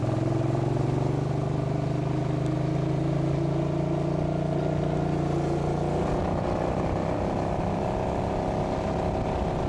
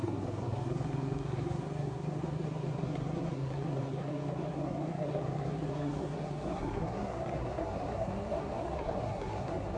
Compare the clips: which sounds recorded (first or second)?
first